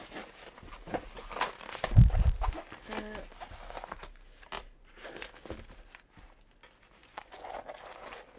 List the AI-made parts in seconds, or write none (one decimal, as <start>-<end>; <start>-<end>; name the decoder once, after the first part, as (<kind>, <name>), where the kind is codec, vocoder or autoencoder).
7.0-7.5 (vocoder, Vocos)